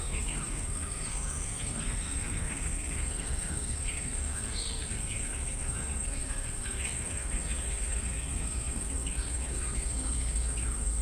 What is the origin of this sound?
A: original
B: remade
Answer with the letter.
B